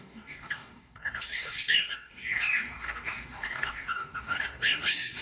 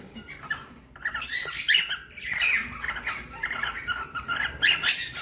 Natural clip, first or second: second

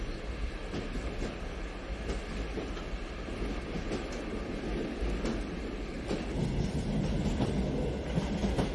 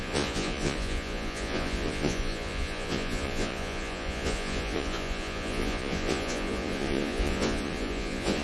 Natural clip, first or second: first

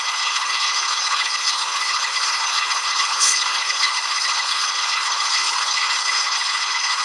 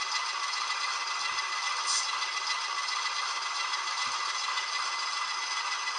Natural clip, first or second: second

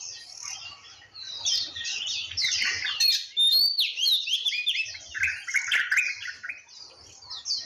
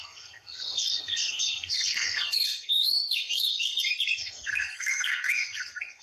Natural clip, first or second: first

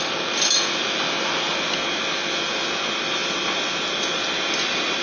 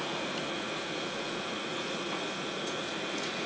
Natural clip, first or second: first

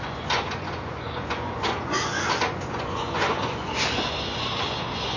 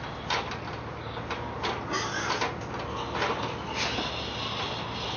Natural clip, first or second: second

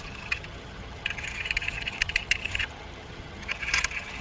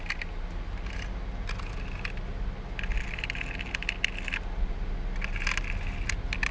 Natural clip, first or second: second